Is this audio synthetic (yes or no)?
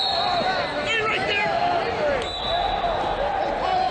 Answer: no